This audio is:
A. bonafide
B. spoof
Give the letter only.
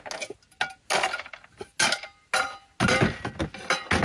A